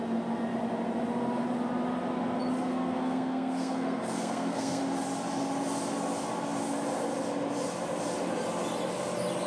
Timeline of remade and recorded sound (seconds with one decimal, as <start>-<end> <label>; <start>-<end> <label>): 0.0-2.7 recorded; 2.7-4.8 remade; 4.8-9.5 recorded